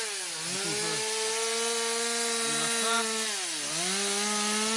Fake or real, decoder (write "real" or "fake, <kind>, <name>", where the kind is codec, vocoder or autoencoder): real